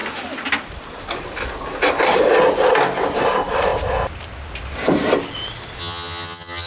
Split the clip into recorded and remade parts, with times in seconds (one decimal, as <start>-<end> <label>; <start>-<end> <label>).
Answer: 0.0-5.8 recorded; 5.8-6.7 remade